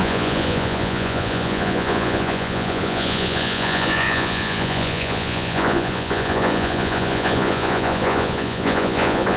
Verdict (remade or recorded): remade